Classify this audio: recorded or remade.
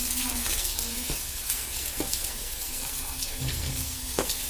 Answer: remade